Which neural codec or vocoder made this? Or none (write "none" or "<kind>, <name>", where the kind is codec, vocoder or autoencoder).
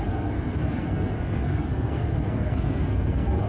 codec, SNAC